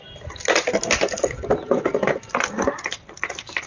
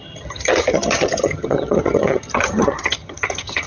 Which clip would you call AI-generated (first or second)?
second